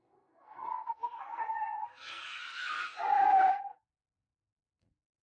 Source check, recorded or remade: remade